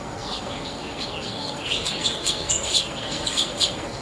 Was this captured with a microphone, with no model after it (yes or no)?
no